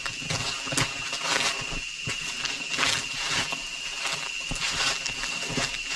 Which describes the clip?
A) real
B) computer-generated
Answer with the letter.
A